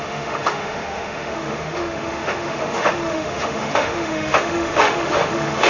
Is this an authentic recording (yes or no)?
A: no